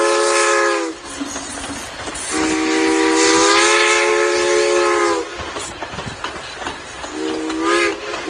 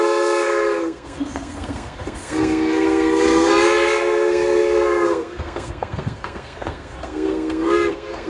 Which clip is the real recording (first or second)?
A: first